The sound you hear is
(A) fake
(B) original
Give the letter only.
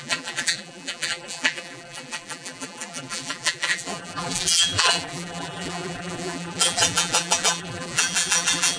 A